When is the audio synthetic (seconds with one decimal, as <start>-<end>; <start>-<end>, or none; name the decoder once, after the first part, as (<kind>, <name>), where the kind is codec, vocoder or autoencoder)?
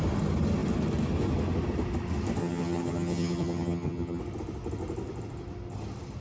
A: 2.4-4.2 (vocoder, HiFi-GAN)